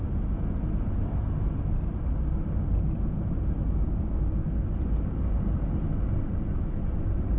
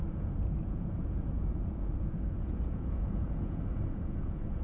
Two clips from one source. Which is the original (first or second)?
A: first